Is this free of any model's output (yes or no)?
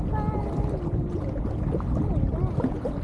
yes